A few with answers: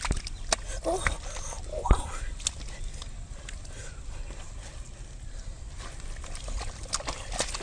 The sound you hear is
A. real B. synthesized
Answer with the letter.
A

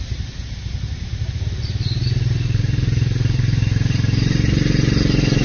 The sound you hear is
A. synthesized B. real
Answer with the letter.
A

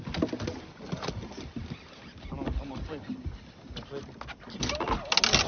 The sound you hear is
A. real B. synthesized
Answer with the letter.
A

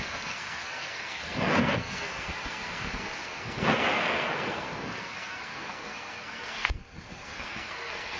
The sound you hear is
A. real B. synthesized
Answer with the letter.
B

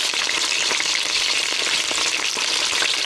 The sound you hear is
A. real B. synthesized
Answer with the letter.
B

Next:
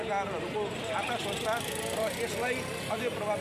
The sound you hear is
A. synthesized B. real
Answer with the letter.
B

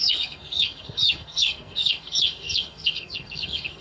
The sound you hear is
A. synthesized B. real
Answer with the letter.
A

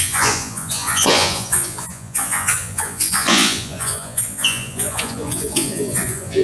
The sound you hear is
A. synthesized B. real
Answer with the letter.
A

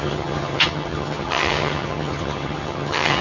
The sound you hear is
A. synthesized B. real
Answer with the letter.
A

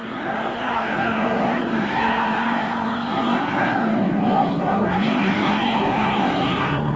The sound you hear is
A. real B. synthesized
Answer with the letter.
B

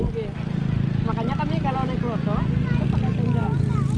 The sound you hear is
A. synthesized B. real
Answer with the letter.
B